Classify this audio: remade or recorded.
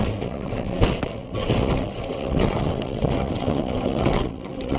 remade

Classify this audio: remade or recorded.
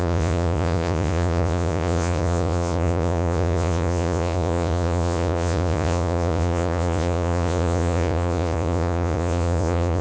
remade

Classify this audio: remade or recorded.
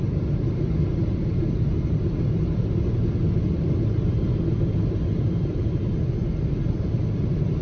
recorded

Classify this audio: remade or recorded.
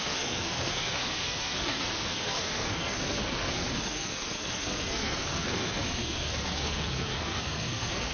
remade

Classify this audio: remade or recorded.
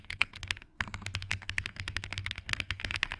remade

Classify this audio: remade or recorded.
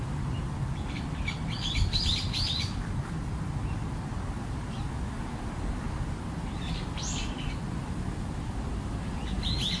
recorded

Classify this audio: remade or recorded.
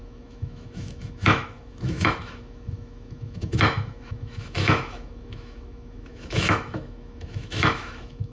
remade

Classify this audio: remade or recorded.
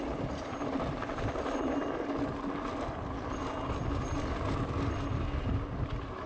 recorded